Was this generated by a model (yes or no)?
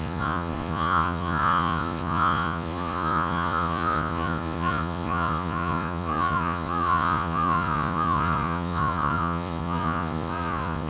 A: yes